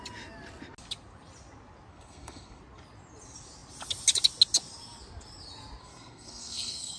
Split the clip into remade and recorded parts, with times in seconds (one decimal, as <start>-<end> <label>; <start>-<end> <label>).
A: 0.0-1.9 recorded; 1.9-2.6 remade; 2.6-5.8 recorded; 5.8-7.0 remade